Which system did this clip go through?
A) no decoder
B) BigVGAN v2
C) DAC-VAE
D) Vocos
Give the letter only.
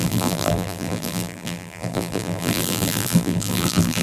B